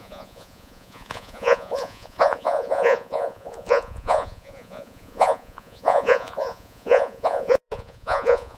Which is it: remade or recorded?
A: remade